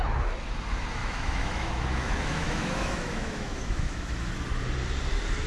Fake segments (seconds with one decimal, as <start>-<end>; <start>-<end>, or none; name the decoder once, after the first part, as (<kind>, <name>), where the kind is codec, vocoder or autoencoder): 1.0-4.3 (autoencoder, DAC-VAE)